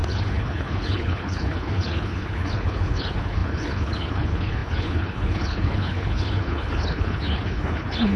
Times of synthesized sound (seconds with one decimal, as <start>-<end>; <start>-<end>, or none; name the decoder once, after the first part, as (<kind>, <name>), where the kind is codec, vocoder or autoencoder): 0.0-8.2 (codec, HILCodec)